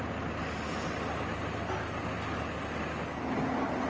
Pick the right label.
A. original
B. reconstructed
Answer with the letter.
A